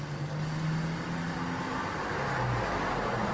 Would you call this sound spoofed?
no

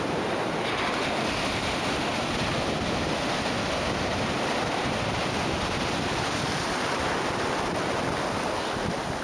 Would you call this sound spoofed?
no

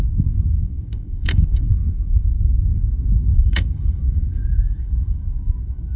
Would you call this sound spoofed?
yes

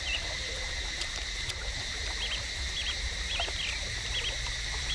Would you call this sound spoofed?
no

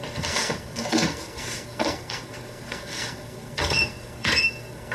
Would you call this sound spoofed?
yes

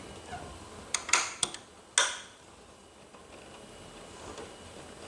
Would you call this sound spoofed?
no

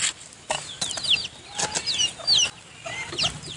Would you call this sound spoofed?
no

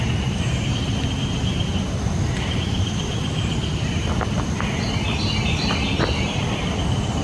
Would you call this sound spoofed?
no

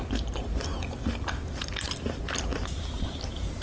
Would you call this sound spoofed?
no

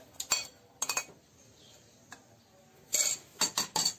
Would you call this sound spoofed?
no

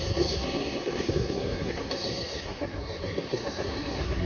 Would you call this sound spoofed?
yes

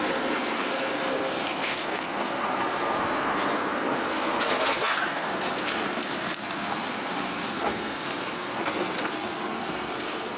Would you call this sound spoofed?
yes